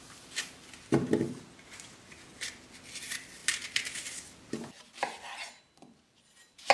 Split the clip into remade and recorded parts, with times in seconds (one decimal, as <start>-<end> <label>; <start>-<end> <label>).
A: 0.0-6.7 recorded